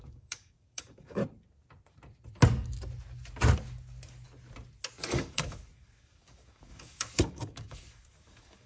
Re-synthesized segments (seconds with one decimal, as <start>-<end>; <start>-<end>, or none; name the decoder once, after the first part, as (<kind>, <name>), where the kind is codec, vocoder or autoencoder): 0.0-1.2 (codec, DAC); 5.0-8.7